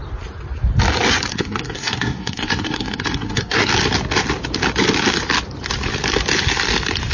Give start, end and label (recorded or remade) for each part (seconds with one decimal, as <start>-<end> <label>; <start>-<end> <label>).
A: 0.0-1.3 recorded; 1.3-3.7 remade; 3.7-7.1 recorded